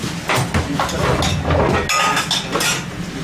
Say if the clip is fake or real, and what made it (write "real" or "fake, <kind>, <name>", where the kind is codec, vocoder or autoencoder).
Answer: real